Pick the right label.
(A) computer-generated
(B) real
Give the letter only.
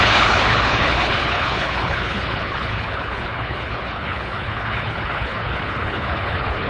A